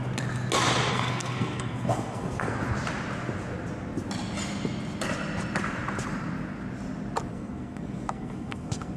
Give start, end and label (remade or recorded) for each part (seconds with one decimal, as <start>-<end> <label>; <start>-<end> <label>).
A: 0.0-0.9 recorded; 0.9-2.6 remade; 2.6-7.3 recorded; 7.3-9.0 remade